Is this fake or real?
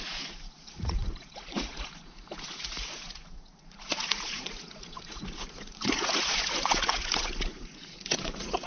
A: fake